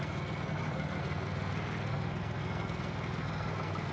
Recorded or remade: remade